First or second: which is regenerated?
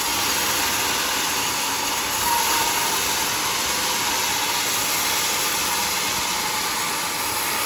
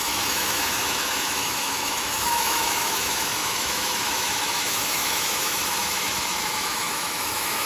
second